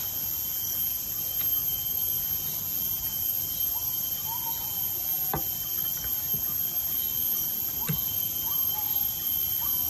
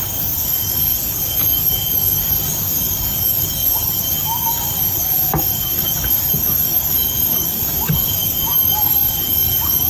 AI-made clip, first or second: second